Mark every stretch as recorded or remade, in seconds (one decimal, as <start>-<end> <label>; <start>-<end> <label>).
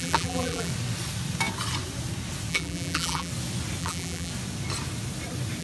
0.0-0.7 remade; 0.7-2.5 recorded; 2.5-3.3 remade; 3.3-3.8 recorded; 3.8-4.3 remade; 4.3-5.6 recorded